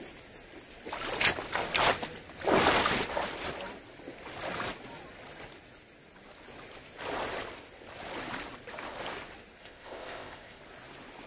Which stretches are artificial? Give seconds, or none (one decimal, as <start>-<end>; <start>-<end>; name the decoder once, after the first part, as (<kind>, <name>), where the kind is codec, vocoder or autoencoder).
9.6-10.6 (codec, ZipCodec)

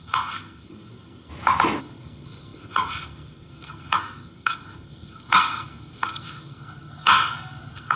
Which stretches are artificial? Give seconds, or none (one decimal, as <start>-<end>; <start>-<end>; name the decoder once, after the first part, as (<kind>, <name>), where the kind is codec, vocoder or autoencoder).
0.0-1.3 (codec, SNAC); 1.8-8.0